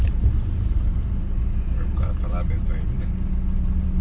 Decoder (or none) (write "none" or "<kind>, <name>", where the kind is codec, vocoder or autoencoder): none